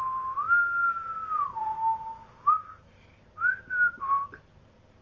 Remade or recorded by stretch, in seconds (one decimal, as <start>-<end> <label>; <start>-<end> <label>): 0.0-5.0 recorded